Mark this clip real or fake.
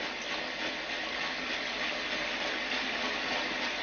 real